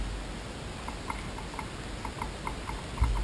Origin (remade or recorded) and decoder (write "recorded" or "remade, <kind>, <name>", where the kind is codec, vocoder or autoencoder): recorded